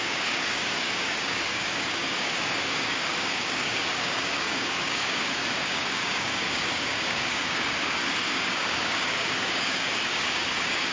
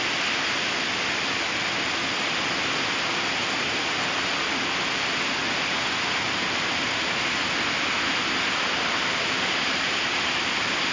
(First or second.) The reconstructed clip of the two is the first